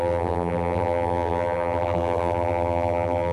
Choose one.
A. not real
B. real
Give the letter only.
A